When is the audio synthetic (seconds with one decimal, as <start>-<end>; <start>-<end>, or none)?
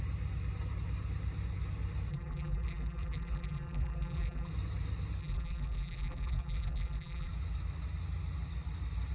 2.1-4.5; 5.2-7.3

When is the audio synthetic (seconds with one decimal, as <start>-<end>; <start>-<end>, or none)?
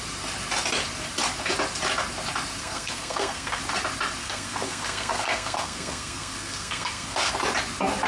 2.6-3.6; 4.2-7.3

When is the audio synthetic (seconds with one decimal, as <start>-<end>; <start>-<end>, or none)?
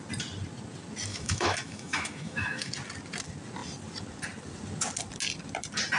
1.1-2.7